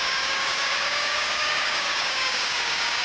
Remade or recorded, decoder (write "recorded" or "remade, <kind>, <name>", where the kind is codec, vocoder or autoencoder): remade, codec, DAC